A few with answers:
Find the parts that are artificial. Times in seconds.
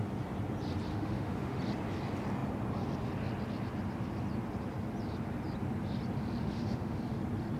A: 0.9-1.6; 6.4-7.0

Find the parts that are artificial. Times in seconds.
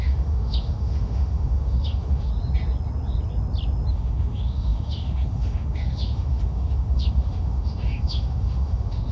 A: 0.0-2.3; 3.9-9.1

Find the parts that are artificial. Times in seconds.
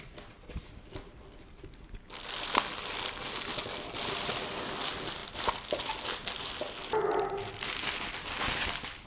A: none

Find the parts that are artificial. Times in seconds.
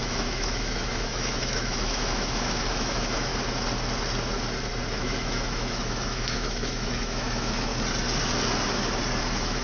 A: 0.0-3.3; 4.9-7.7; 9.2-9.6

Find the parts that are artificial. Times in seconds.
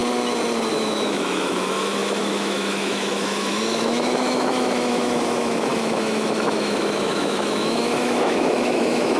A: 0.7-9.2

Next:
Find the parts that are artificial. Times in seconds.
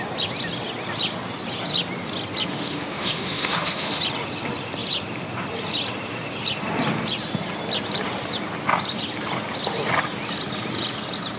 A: 2.5-4.0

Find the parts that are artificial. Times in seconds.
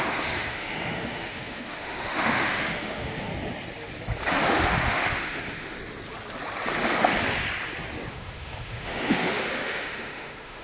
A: 0.0-3.3; 4.3-5.8; 8.1-10.6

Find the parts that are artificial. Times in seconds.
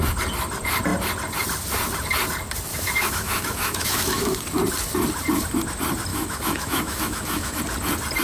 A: 2.7-4.4; 6.1-7.6